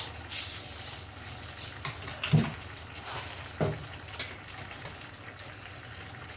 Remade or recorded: remade